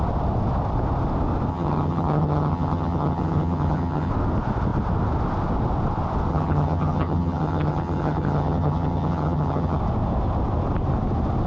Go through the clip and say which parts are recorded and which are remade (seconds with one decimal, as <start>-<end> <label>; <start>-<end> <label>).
0.0-1.5 recorded; 1.5-4.1 remade; 4.1-6.3 recorded; 6.3-9.8 remade; 9.8-11.5 recorded